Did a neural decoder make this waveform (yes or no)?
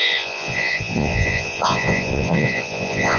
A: yes